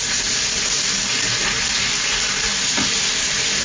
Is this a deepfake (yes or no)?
no